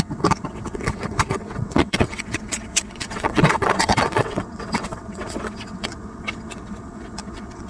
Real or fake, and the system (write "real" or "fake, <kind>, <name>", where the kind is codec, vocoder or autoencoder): fake, vocoder, WaveNeXt